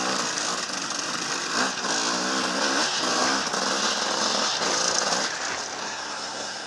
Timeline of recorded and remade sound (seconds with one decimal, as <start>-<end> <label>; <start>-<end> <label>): 0.0-5.8 recorded; 5.8-6.7 remade